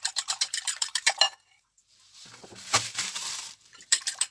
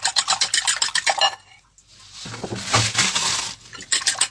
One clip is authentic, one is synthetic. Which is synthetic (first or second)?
first